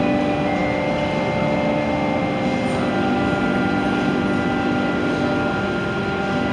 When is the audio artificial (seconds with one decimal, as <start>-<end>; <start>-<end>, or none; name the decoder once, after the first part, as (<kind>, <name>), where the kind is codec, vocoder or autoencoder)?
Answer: none